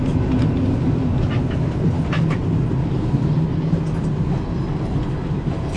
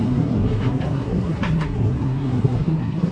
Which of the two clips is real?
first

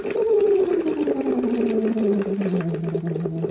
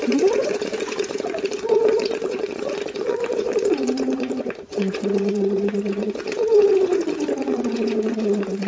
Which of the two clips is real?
first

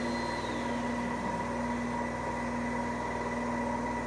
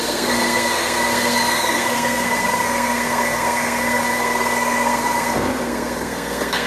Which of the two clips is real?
first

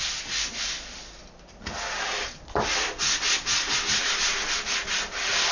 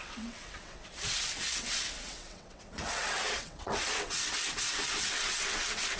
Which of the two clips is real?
first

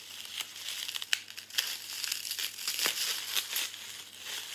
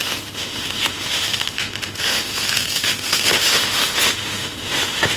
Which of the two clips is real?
first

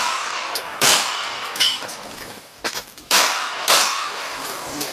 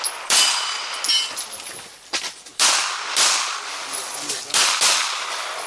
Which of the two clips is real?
second